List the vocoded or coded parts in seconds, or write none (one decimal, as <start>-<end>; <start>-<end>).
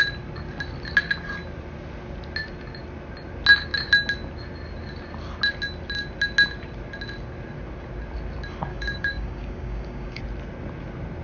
8.7-10.2